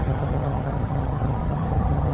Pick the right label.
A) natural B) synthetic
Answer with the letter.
B